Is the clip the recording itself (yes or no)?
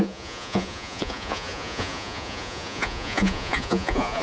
no